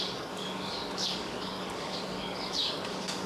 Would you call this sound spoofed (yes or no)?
yes